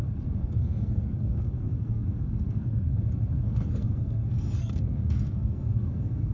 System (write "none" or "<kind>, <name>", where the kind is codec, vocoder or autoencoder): codec, SNAC